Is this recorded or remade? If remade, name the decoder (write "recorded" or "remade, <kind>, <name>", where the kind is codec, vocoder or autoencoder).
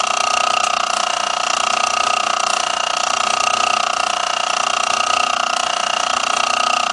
recorded